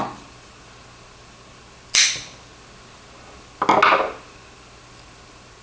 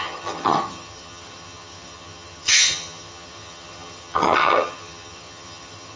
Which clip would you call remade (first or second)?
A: second